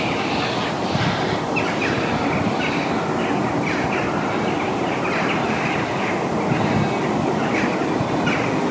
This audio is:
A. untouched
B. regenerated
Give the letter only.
A